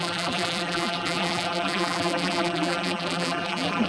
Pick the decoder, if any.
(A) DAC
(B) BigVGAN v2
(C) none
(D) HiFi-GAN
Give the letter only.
B